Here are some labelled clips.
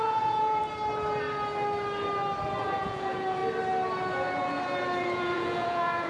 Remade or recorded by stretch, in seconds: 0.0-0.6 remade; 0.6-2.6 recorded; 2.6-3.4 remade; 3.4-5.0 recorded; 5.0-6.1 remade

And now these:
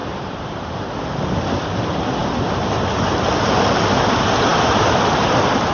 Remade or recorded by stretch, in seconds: 0.0-0.9 remade; 0.9-2.2 recorded; 2.2-2.7 remade; 2.7-5.7 recorded

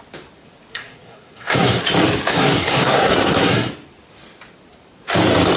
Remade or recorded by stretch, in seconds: 0.0-0.7 recorded; 0.7-1.8 remade; 1.8-2.3 recorded; 2.3-3.7 remade; 3.7-5.6 recorded

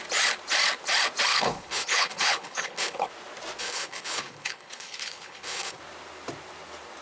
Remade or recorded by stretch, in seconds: 0.0-1.3 recorded; 1.3-3.1 remade; 3.1-3.6 recorded; 3.6-5.8 remade; 5.8-7.0 recorded

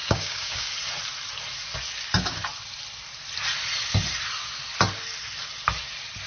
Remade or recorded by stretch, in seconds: 0.0-0.7 remade; 0.7-6.3 recorded

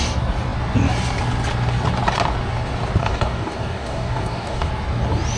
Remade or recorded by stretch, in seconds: 0.0-3.0 recorded; 3.0-4.7 remade; 4.7-5.4 recorded

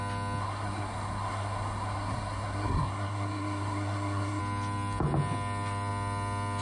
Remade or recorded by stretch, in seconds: 0.0-0.4 recorded; 0.4-4.4 remade; 4.4-6.6 recorded

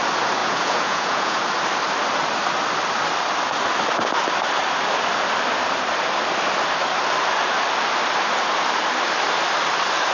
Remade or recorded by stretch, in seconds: 0.0-0.4 recorded; 0.4-1.4 remade; 1.4-10.1 recorded